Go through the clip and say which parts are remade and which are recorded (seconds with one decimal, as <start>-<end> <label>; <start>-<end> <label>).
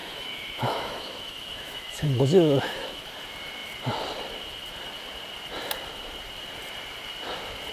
0.0-3.0 remade; 3.0-7.7 recorded